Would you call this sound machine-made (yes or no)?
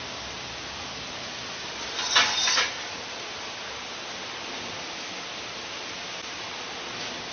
no